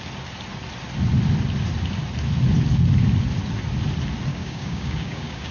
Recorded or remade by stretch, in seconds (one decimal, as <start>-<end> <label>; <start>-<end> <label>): 0.0-4.3 recorded; 4.3-5.5 remade